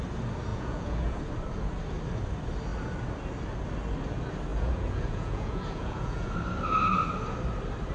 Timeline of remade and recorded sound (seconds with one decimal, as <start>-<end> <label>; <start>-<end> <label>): 0.0-0.5 recorded; 0.5-1.2 remade; 1.2-4.5 recorded; 4.5-6.3 remade; 6.3-7.9 recorded